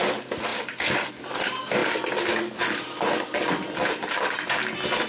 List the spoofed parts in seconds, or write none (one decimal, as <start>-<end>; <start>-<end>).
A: none